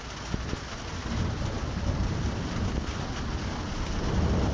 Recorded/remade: recorded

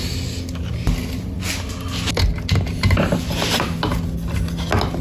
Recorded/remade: recorded